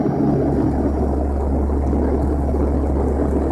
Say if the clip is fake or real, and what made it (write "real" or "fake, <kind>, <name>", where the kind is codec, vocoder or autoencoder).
real